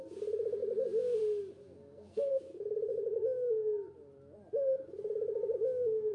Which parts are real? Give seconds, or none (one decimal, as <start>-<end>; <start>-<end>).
0.0-1.6; 2.3-6.1